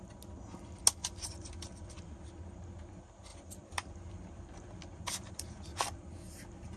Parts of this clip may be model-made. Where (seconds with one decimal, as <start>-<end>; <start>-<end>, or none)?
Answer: 1.0-2.3; 3.3-6.8